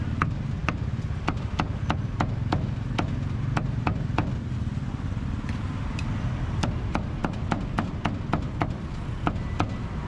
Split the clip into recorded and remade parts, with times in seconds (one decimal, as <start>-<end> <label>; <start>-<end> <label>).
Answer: 0.0-10.1 recorded